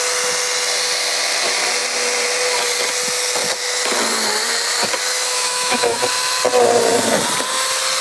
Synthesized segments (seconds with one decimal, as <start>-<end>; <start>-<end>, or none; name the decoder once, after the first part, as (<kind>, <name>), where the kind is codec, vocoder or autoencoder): 5.1-6.0 (autoencoder, DAC-VAE)